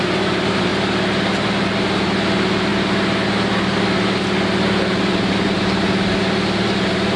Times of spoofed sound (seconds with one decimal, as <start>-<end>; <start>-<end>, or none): 0.0-0.7; 1.7-2.7; 5.2-7.2